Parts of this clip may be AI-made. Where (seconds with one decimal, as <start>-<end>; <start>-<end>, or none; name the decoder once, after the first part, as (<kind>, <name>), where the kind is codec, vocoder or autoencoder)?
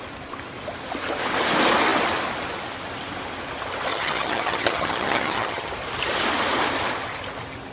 3.9-5.7 (vocoder, HiFi-GAN)